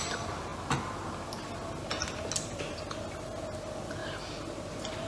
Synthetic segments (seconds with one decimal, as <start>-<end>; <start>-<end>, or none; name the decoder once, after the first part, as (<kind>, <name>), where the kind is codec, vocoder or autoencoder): none